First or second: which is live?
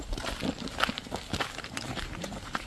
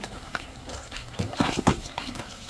first